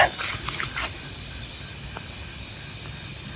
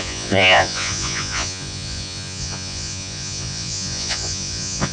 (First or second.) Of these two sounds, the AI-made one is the second